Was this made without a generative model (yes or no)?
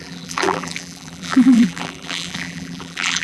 no